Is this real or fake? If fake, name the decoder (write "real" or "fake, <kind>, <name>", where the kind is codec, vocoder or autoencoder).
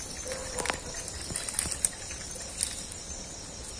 real